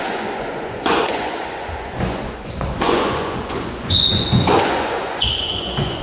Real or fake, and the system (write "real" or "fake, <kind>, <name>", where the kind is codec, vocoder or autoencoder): fake, vocoder, Vocos